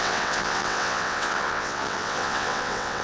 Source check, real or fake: fake